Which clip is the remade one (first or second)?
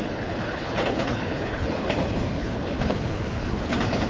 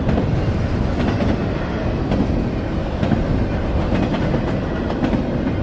first